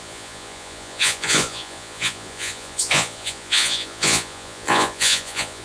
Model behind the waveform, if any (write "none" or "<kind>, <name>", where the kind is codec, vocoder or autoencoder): vocoder, Vocos